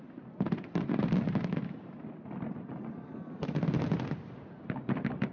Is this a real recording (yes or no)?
yes